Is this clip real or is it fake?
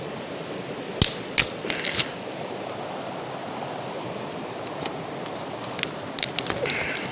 real